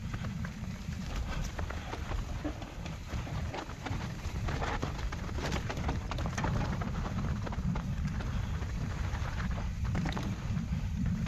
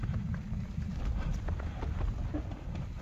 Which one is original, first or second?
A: second